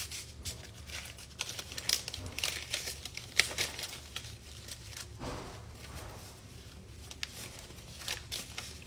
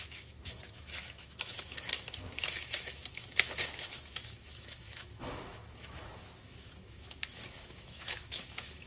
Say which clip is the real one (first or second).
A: first